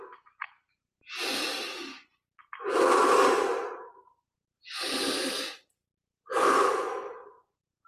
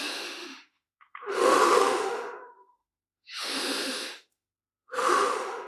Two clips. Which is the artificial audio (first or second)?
second